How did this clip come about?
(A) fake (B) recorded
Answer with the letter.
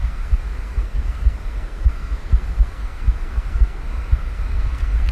A